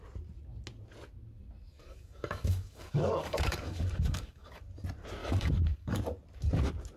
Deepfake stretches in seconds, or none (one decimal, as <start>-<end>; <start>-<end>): 1.8-4.6; 5.2-6.0